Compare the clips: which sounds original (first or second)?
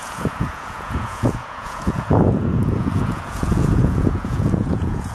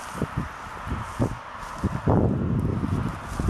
second